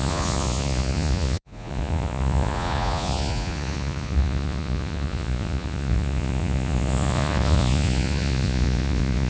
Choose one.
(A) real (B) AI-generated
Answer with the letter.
B